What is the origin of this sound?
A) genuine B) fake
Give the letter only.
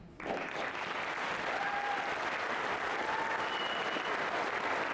A